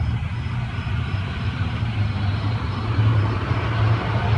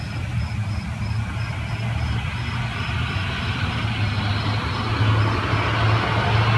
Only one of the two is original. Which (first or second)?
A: second